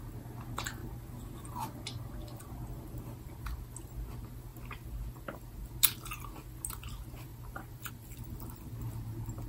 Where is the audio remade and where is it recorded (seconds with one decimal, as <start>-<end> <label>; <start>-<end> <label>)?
0.0-9.5 recorded